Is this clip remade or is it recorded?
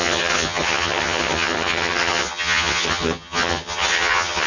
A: remade